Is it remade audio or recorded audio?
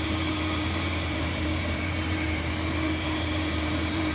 remade